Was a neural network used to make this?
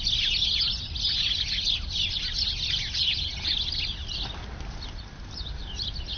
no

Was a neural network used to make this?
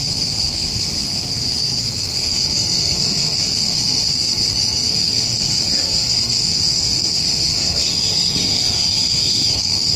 yes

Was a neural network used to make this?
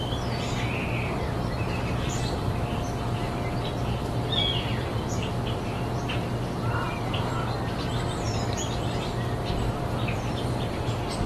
no